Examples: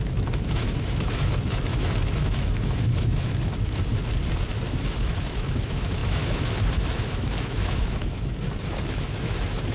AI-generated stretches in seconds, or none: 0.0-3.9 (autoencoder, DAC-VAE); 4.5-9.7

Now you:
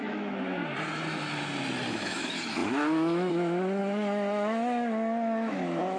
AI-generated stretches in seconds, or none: 0.0-0.6 (autoencoder, DAC-VAE); 1.9-6.0

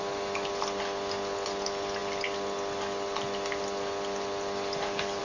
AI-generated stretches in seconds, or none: none

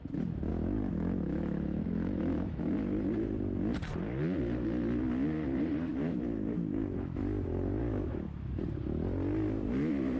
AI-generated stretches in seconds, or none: 0.5-2.6 (autoencoder, DAC-VAE); 5.9-7.2; 7.8-8.5

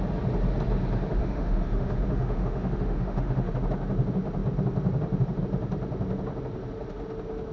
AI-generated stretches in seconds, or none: 1.2-3.5 (autoencoder, DAC-VAE)

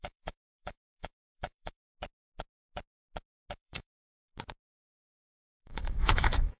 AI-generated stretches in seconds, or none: 0.0-1.8 (autoencoder, DAC-VAE); 3.5-4.3; 5.4-6.6

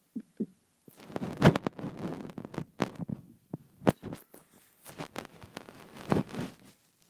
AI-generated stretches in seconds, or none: 3.1-3.8 (autoencoder, DAC-VAE); 5.3-6.5

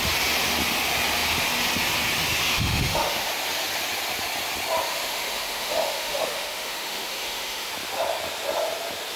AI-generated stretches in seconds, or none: 2.5-3.3 (autoencoder, DAC-VAE); 4.9-7.7